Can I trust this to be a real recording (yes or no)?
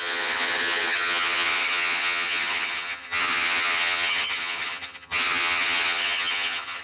no